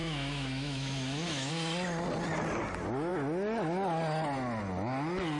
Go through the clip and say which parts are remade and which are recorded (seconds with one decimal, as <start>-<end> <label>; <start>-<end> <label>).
0.0-1.5 remade; 1.5-5.4 recorded